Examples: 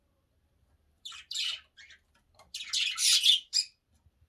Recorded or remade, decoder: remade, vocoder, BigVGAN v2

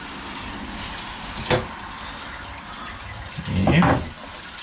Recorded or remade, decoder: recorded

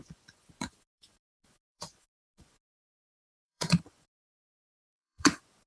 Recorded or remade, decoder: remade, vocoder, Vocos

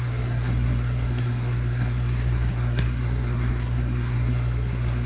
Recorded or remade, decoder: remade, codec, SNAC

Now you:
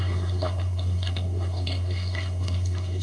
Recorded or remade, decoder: remade, codec, SNAC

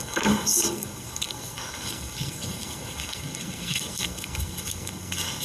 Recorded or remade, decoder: remade, codec, SNAC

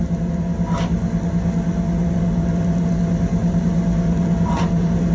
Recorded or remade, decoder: recorded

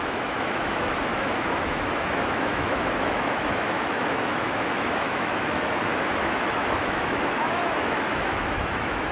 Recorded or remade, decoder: remade, autoencoder, DAC-VAE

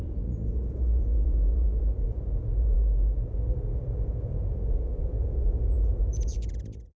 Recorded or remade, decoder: remade, vocoder, Vocos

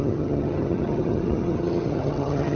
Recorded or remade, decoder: remade, vocoder, HiFi-GAN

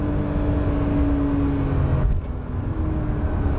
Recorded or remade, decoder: recorded